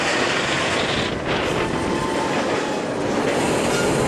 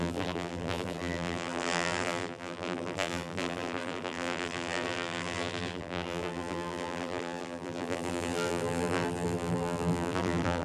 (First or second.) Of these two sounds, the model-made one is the second